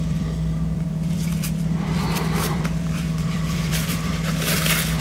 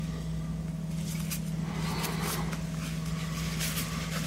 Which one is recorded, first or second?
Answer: second